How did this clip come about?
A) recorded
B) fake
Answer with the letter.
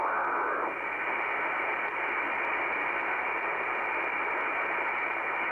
A